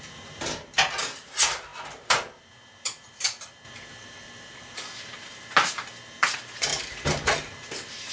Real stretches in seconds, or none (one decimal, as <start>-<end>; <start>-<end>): none